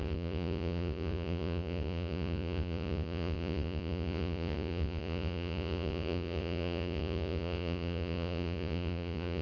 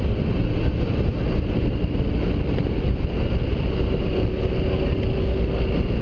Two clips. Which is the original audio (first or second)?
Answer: second